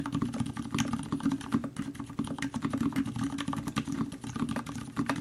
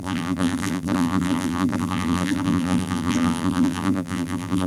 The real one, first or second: first